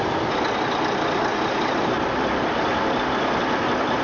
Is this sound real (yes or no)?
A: yes